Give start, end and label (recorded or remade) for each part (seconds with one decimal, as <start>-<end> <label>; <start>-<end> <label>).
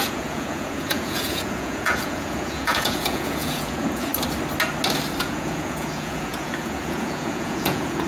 0.0-4.1 remade; 4.1-5.2 recorded; 5.2-8.1 remade